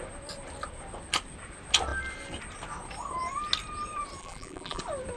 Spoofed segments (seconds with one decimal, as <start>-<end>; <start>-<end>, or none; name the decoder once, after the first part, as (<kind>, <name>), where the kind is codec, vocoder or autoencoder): 4.2-4.8 (vocoder, BigVGAN v2)